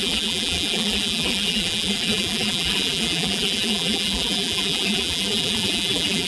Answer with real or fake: fake